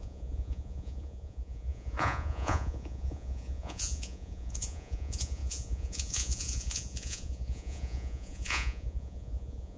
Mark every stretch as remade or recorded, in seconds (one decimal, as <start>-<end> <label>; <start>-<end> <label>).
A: 0.0-9.8 remade